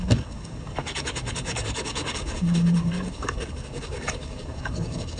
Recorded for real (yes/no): no